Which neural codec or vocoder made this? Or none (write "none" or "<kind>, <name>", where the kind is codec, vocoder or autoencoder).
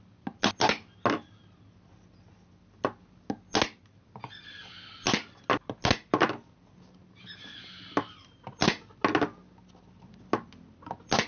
none